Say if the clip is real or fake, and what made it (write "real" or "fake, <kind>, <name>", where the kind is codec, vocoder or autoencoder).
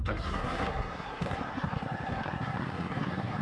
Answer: fake, codec, SNAC